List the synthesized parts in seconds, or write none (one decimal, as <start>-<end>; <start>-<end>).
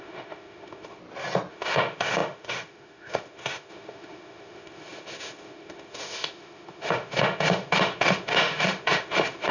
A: 0.0-1.0; 1.5-9.5